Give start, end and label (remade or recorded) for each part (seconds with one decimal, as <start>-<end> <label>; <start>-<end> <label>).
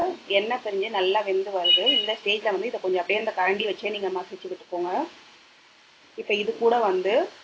0.0-3.2 recorded; 3.2-5.6 remade; 5.6-7.4 recorded